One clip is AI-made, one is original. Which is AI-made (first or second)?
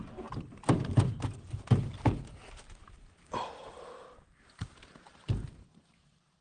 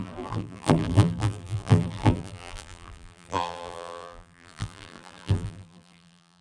second